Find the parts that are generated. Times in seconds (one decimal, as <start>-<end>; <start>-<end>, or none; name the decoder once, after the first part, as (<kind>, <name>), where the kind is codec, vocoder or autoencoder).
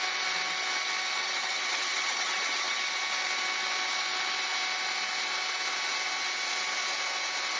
1.2-2.8 (vocoder, HiFi-GAN)